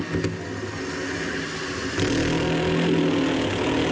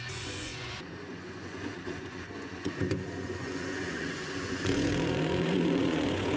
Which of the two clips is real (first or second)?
first